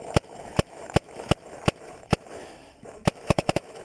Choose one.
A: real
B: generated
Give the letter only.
B